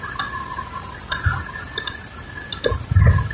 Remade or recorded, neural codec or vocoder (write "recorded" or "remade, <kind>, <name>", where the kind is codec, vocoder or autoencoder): recorded